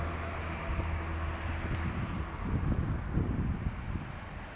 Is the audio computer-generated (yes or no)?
no